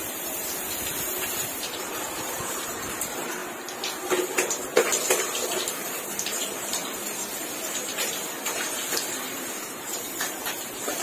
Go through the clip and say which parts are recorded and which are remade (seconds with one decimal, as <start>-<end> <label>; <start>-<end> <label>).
0.0-3.4 remade; 3.4-5.7 recorded; 5.7-11.0 remade

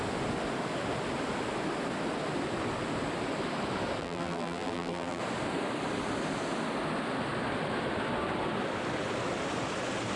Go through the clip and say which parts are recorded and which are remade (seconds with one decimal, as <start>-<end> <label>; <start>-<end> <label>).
0.0-4.0 recorded; 4.0-5.2 remade; 5.2-10.2 recorded